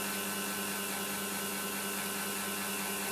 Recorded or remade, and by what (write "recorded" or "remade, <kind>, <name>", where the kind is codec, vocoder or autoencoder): recorded